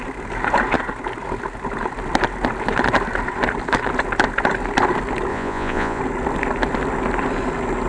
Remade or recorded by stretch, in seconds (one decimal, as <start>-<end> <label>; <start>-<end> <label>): 0.0-5.3 recorded; 5.3-6.0 remade; 6.0-7.9 recorded